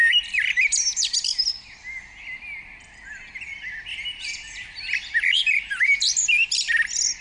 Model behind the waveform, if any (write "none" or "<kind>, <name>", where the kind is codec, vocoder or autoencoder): none